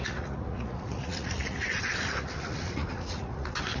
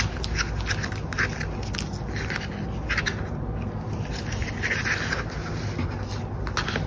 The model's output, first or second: first